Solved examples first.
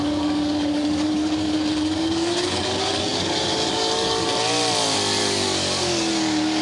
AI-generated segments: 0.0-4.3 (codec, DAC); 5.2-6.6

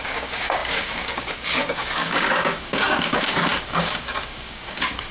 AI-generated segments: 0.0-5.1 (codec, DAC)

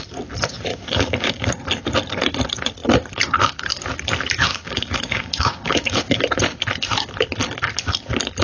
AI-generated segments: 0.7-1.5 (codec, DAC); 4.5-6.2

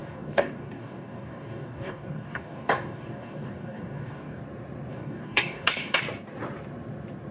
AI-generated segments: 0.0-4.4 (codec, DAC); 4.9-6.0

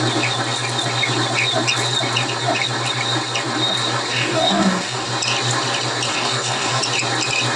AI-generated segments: 4.1-5.1 (codec, DAC); 6.1-6.8

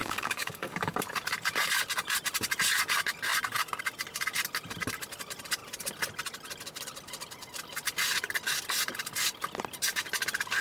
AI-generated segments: 0.0-1.0 (codec, DAC)

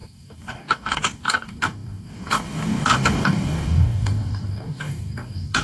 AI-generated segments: 0.0-5.6 (codec, DAC)

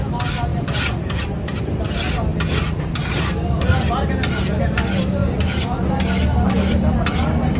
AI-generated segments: none